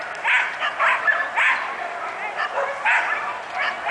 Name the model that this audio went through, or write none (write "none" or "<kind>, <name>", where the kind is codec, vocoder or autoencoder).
none